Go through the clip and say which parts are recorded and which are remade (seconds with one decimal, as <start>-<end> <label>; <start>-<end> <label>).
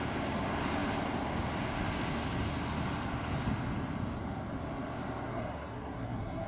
0.0-5.3 recorded; 5.3-6.5 remade